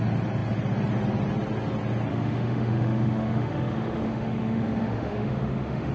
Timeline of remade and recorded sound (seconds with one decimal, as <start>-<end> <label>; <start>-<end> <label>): 0.0-2.1 recorded; 2.1-5.9 remade